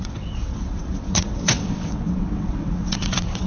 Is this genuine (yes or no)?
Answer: no